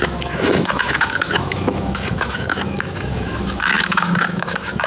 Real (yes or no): no